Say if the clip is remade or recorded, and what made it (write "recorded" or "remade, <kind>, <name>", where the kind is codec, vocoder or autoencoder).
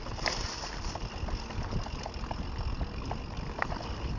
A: recorded